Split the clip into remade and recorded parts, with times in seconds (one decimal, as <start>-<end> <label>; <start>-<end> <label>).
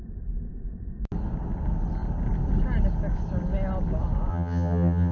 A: 0.0-4.3 recorded; 4.3-5.1 remade